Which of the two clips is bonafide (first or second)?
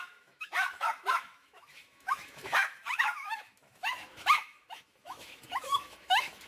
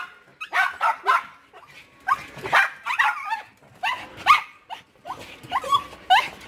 second